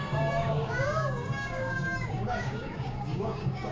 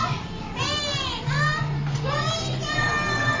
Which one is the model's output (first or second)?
first